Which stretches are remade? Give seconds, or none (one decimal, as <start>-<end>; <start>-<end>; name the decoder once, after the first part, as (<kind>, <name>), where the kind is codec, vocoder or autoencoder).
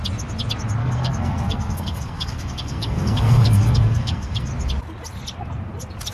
0.8-4.5 (codec, SNAC)